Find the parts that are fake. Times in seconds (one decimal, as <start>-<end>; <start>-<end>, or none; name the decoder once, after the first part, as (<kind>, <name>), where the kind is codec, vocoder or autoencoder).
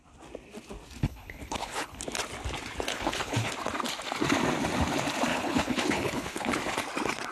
1.0-2.0 (codec, HILCodec); 2.9-3.5; 5.3-6.6